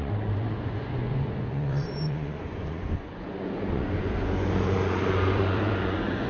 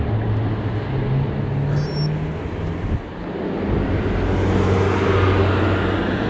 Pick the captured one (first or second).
second